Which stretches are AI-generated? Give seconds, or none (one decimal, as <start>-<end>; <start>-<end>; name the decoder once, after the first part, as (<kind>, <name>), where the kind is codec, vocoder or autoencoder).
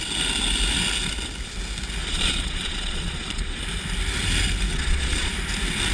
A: 2.0-3.6 (vocoder, Vocos); 4.7-5.3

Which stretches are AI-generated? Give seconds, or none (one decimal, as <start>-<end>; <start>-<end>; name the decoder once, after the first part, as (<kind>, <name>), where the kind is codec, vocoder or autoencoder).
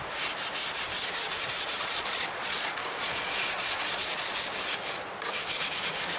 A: 1.7-4.3 (vocoder, Vocos)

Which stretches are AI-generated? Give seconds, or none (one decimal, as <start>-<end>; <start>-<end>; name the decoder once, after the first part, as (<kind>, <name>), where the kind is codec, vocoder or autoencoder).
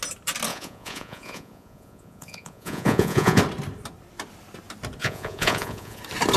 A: 0.5-3.4 (vocoder, Vocos); 5.0-6.0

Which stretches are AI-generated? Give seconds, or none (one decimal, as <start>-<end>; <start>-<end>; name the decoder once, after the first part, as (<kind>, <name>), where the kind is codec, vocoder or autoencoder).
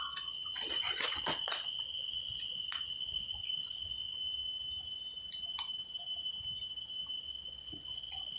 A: 0.0-4.2 (vocoder, Vocos); 7.2-8.4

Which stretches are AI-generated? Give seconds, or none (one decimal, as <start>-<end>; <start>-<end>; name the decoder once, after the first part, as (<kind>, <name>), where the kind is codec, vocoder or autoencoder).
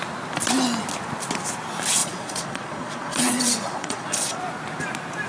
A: 2.0-4.4 (vocoder, Vocos)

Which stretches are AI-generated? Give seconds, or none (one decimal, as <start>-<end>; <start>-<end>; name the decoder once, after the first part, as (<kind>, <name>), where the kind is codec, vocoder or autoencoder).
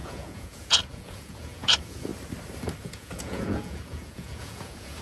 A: 0.0-2.1 (vocoder, Vocos); 2.8-5.0